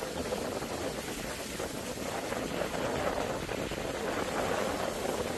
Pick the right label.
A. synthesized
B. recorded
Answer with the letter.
B